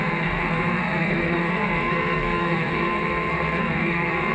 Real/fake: fake